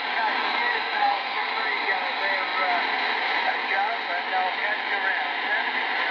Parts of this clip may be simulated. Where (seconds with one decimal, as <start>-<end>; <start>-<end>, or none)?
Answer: 1.0-1.5